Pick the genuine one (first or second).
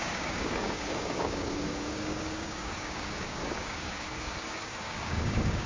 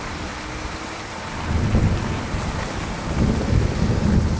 second